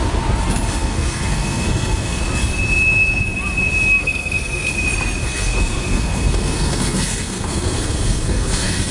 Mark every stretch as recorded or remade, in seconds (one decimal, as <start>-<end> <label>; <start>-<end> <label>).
0.0-0.8 recorded; 0.8-2.2 remade; 2.2-4.0 recorded; 4.0-4.7 remade; 4.7-5.2 recorded; 5.2-8.9 remade